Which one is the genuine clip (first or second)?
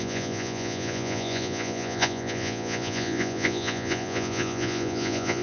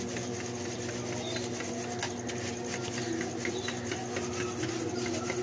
second